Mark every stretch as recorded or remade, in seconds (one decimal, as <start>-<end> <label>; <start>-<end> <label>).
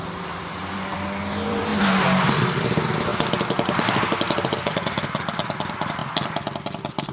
0.0-1.7 remade; 1.7-2.3 recorded; 2.3-3.1 remade; 3.1-4.7 recorded; 4.7-6.0 remade; 6.0-7.1 recorded